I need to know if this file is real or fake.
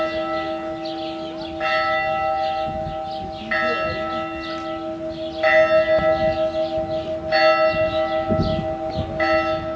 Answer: real